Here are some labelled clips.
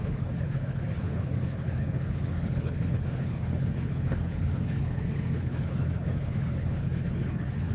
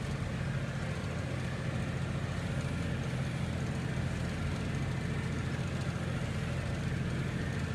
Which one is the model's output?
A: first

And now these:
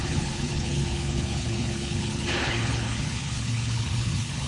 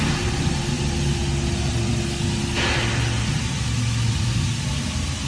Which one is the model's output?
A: first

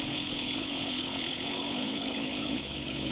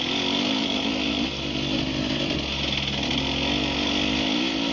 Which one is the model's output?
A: first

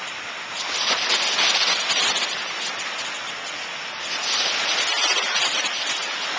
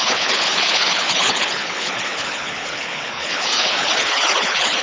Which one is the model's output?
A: second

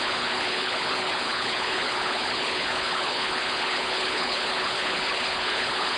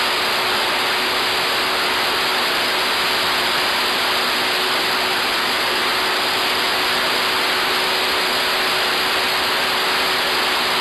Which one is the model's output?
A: first